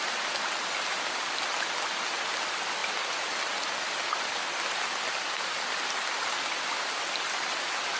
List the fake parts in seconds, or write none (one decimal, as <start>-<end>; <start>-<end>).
none